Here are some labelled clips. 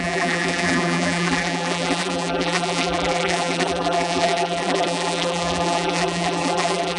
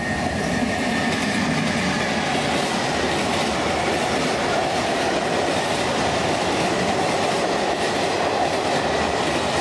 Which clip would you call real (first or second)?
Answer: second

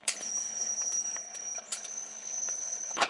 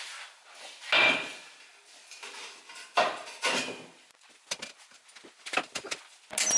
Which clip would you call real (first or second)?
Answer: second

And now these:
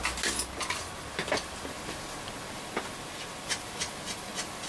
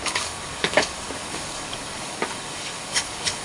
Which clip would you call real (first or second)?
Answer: first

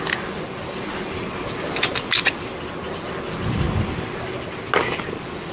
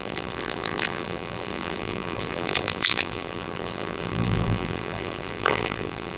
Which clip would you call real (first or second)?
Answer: first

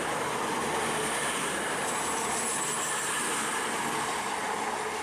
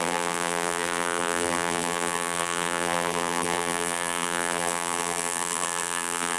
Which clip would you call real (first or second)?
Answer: first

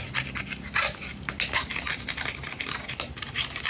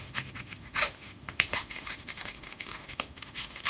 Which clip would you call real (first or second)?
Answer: first